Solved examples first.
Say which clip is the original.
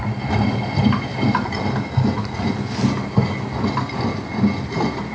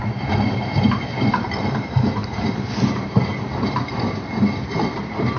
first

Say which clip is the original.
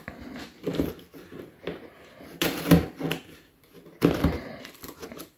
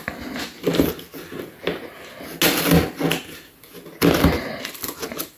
second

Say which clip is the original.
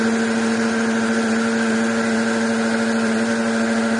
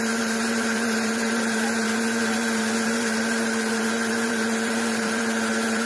first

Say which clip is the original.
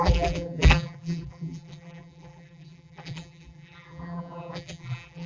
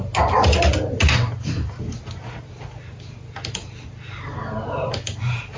second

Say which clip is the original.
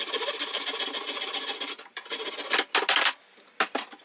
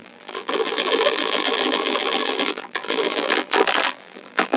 first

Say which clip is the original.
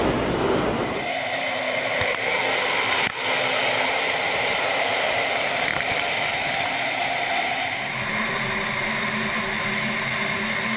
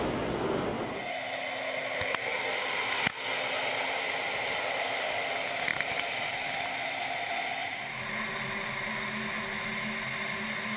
second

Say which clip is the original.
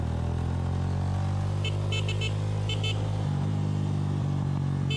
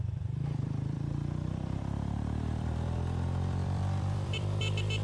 first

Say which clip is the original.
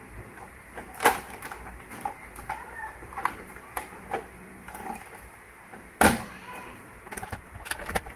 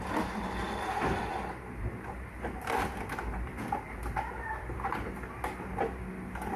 second